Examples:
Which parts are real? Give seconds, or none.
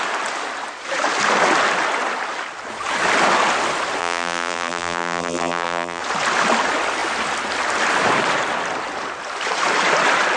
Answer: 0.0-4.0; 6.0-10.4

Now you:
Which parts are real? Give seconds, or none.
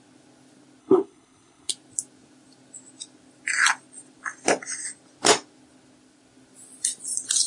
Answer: 0.0-0.8; 1.7-7.5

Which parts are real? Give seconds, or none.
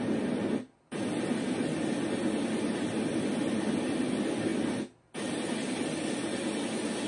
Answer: 0.0-7.1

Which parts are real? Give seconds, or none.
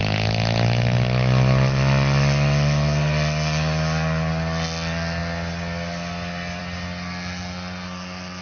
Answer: 0.0-8.4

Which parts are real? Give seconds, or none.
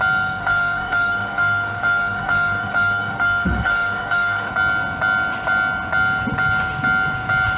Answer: 0.0-0.4; 4.5-7.6